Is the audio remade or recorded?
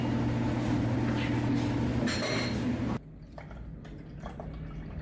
recorded